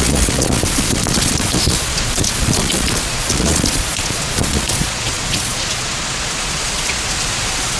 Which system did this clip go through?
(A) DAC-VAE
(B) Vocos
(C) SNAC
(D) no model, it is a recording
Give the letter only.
B